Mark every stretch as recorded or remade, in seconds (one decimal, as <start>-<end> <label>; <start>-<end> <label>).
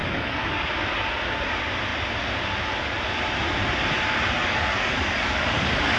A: 0.0-0.7 remade; 0.7-4.4 recorded; 4.4-6.0 remade